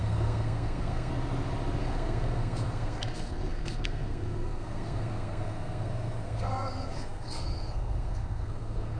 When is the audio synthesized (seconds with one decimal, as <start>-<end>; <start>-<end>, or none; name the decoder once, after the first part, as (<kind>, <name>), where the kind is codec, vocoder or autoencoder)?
0.0-1.1 (codec, SNAC); 1.8-9.0